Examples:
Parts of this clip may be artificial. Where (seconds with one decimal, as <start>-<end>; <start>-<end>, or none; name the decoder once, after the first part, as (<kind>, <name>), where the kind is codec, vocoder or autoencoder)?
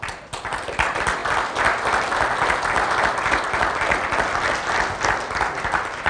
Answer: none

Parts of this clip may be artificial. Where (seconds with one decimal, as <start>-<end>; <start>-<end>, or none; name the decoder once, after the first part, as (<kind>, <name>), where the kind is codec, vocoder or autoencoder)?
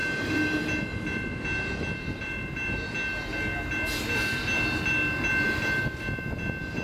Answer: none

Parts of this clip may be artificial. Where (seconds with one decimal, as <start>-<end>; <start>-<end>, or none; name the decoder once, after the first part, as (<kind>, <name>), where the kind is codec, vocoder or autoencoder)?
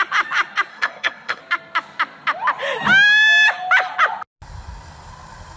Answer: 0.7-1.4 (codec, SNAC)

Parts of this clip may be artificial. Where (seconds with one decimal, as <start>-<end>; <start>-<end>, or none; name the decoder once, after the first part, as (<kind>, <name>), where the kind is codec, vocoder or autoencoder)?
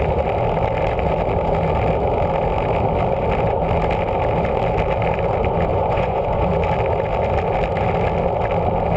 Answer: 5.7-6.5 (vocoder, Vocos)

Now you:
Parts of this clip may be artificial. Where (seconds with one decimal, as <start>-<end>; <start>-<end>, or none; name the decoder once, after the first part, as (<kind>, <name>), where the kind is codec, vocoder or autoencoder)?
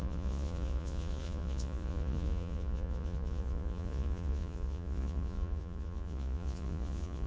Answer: 0.0-7.3 (vocoder, Vocos)